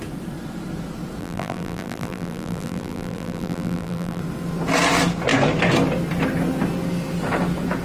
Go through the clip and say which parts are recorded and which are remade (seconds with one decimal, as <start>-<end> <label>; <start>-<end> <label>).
0.0-1.2 recorded; 1.2-4.2 remade; 4.2-7.8 recorded